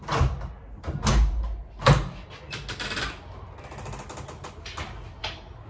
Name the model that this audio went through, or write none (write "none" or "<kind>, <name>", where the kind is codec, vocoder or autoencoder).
none